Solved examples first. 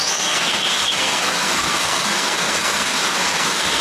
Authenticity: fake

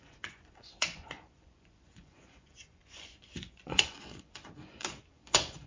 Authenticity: fake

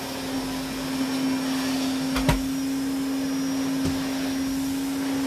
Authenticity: real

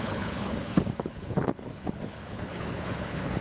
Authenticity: fake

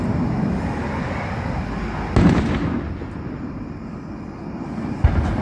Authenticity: real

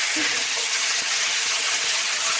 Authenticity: fake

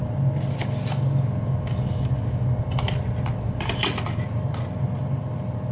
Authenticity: real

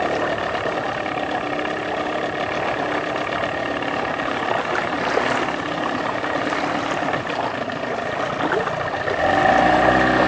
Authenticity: real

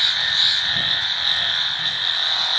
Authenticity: real